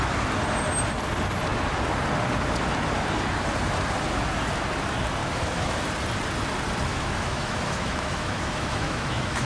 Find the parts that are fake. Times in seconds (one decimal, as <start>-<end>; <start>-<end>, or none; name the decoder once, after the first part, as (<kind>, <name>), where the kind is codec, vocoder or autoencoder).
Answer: 5.2-5.8 (autoencoder, DAC-VAE); 6.9-9.5